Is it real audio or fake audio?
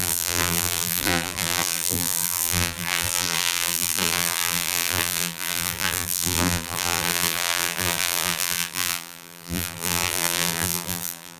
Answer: fake